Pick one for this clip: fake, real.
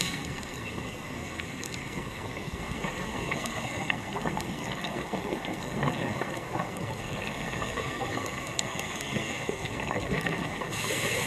fake